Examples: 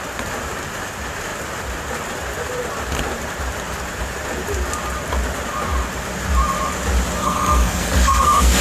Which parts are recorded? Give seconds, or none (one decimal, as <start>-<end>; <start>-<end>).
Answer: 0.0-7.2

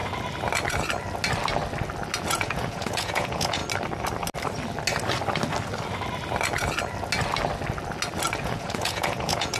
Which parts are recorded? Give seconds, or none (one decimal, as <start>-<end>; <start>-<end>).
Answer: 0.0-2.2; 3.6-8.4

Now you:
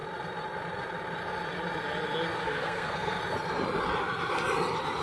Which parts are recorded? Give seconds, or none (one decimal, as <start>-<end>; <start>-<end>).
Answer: 0.0-2.4; 3.2-5.0